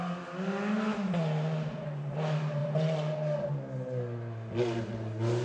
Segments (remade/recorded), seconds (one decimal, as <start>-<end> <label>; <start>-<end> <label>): 0.0-2.6 recorded; 2.6-3.5 remade; 3.5-5.4 recorded